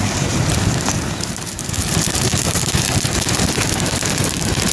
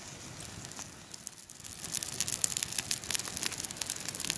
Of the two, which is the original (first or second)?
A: second